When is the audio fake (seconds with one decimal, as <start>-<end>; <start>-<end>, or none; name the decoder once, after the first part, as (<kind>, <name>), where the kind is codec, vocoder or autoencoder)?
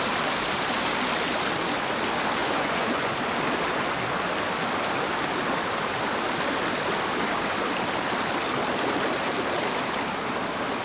2.4-3.1 (vocoder, Vocos)